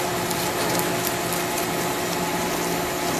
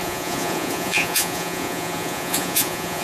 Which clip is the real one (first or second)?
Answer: first